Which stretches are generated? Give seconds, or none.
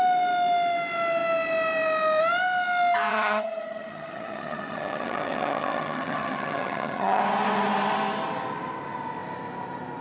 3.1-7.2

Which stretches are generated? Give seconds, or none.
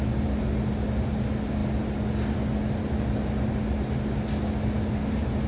none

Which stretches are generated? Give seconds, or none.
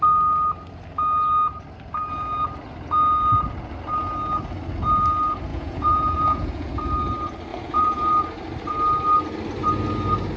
5.5-6.8; 7.5-8.1